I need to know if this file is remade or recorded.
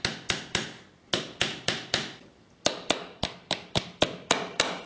recorded